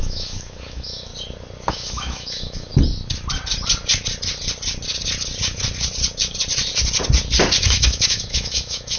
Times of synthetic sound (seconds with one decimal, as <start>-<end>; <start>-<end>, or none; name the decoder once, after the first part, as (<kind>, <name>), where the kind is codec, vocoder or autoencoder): 0.0-1.1 (autoencoder, DAC-VAE); 1.7-2.7; 7.6-9.0